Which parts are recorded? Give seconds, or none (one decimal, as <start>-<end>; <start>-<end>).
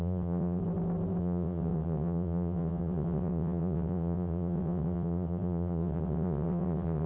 0.6-1.2